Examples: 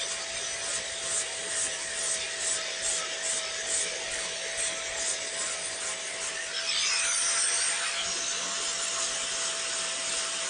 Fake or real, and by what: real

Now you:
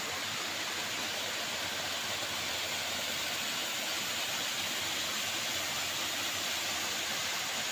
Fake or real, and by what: real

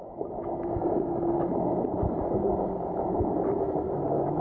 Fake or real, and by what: real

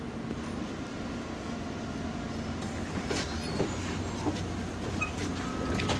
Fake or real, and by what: real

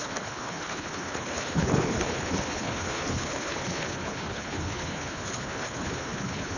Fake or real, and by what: fake, codec, HILCodec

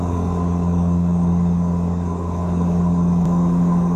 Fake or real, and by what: fake, codec, DAC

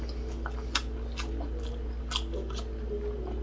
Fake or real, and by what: real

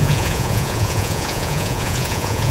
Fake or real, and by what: fake, vocoder, Vocos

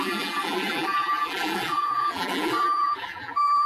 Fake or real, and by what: fake, vocoder, BigVGAN v2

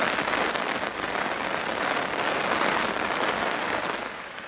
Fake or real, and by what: real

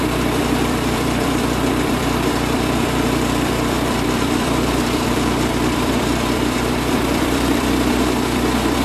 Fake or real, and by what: fake, vocoder, BigVGAN v2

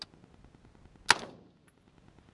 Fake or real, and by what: real